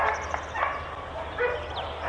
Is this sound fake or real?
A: real